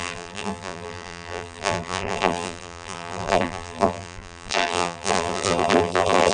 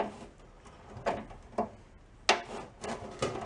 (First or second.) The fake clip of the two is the first